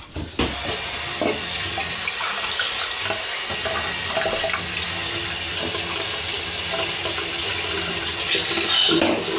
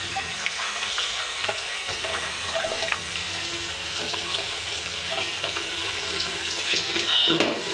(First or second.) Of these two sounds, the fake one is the second